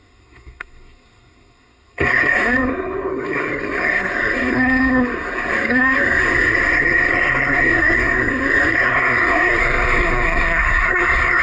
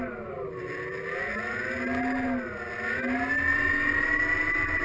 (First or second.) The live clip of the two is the second